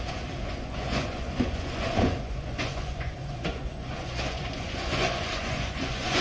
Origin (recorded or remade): remade